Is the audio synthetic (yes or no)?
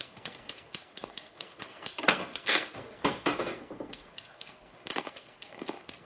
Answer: yes